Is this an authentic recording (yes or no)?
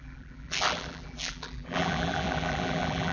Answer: no